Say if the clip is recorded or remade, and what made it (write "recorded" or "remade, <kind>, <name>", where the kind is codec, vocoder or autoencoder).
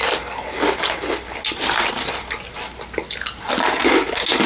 recorded